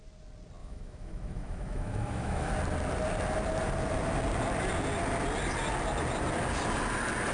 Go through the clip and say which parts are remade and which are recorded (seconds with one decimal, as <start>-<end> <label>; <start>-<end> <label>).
0.0-0.6 recorded; 0.6-2.5 remade; 2.5-7.3 recorded

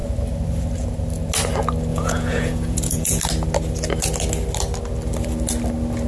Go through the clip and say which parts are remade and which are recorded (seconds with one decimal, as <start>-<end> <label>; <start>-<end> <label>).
0.0-1.9 recorded; 1.9-3.2 remade; 3.2-6.1 recorded

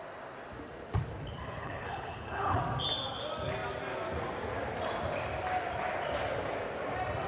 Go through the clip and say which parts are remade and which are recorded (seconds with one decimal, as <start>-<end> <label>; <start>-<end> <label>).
0.0-1.6 recorded; 1.6-2.6 remade; 2.6-7.3 recorded